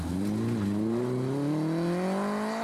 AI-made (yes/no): no